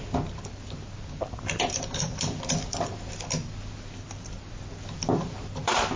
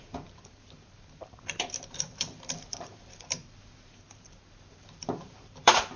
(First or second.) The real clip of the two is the first